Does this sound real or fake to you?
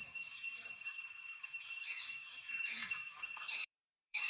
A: fake